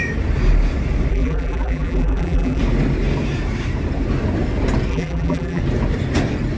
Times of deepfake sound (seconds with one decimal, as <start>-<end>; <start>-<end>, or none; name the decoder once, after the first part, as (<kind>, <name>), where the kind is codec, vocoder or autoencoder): 1.1-2.6 (vocoder, BigVGAN v2); 4.9-5.6